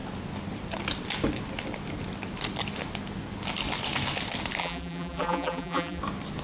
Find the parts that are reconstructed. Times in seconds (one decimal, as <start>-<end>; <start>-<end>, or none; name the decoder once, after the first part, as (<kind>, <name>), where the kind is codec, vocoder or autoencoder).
4.6-6.0 (vocoder, BigVGAN v2)